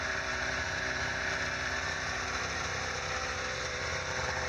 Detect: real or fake fake